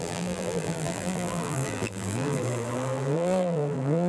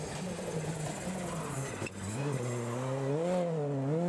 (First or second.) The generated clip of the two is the first